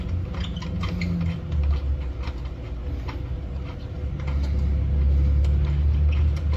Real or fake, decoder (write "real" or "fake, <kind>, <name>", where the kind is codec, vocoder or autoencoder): real